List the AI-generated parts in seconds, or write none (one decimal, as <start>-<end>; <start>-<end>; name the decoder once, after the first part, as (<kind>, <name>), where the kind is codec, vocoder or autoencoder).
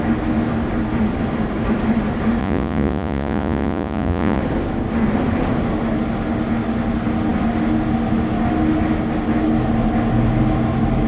2.4-4.4 (vocoder, Vocos)